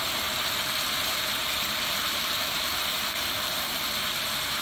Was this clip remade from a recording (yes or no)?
yes